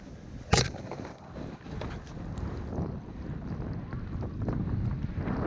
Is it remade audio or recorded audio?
recorded